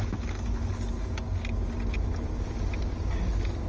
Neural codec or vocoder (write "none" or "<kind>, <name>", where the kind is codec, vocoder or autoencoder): none